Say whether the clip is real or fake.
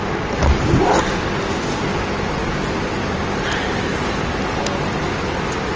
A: real